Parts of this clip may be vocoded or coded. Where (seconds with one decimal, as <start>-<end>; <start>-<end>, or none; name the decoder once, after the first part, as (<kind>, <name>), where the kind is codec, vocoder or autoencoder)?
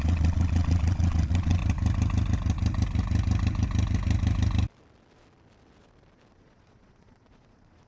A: 0.0-1.6 (vocoder, Vocos); 6.3-7.9